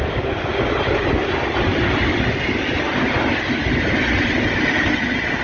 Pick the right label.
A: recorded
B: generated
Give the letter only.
A